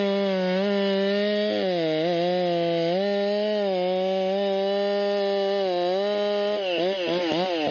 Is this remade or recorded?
recorded